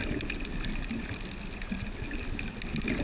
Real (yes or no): yes